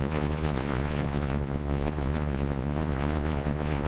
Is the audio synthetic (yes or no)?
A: yes